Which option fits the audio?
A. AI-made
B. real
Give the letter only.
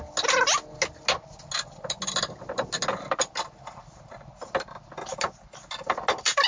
B